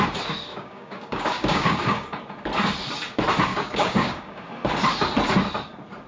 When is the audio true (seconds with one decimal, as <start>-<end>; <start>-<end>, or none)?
0.0-0.5; 2.2-3.5; 4.4-6.1